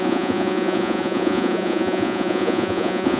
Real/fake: fake